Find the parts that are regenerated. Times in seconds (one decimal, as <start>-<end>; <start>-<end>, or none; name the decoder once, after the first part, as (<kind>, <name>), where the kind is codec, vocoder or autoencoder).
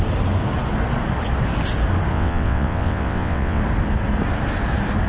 2.1-3.6 (vocoder, WaveNeXt)